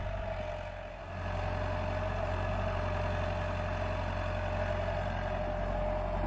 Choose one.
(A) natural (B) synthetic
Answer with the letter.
A